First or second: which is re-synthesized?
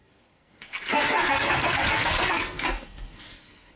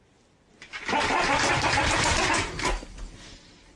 first